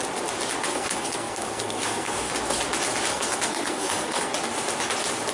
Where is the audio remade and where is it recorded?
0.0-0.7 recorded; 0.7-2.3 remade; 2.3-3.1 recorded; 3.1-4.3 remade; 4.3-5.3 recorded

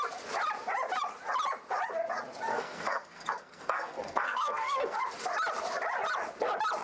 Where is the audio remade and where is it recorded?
0.0-2.5 recorded; 2.5-5.0 remade; 5.0-6.8 recorded